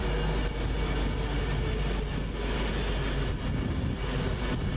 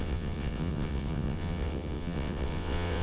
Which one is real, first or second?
first